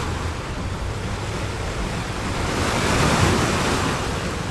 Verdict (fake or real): real